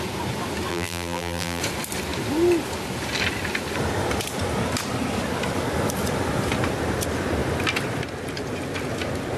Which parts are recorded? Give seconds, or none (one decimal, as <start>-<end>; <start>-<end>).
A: 0.0-0.7; 1.6-9.4